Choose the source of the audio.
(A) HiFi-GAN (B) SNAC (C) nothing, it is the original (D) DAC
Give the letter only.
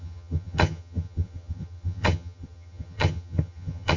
A